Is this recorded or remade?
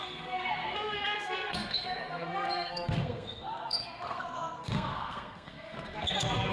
remade